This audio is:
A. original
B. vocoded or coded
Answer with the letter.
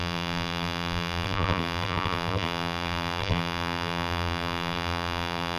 B